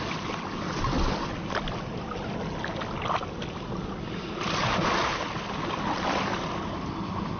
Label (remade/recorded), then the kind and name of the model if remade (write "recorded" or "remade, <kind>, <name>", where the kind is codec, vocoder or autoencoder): recorded